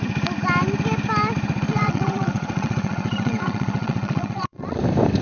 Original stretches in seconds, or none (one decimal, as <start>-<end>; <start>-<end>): 0.0-1.7; 4.8-5.2